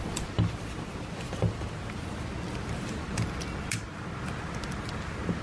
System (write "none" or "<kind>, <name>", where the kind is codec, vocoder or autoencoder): none